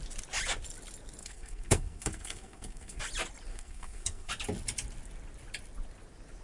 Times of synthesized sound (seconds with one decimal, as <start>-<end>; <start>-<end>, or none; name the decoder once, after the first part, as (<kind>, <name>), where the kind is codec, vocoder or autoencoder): 1.2-3.0 (codec, SNAC); 3.5-4.3